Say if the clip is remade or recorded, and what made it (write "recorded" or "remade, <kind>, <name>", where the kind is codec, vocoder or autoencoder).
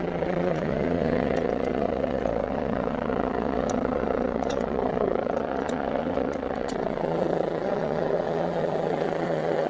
remade, vocoder, WaveNeXt